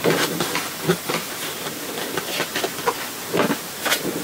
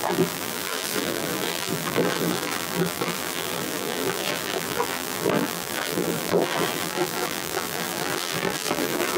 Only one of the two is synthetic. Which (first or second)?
second